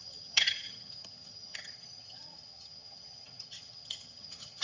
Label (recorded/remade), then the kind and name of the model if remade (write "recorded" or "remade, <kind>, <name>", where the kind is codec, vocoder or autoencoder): remade, vocoder, HiFi-GAN